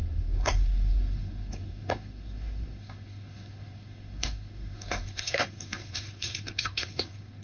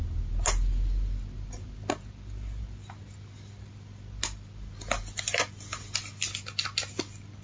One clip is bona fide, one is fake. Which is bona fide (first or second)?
second